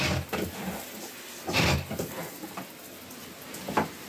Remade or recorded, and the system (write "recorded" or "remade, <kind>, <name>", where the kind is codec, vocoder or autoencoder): recorded